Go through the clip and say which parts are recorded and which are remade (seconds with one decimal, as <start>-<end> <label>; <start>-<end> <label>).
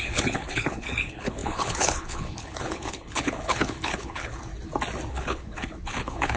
0.0-4.5 remade; 4.5-5.1 recorded; 5.1-6.4 remade